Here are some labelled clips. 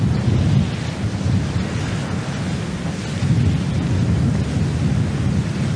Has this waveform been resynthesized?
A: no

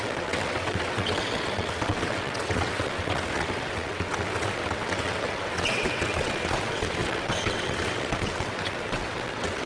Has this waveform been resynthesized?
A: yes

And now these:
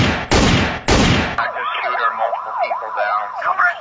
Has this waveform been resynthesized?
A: no